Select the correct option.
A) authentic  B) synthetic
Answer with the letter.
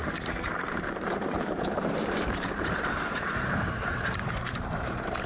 B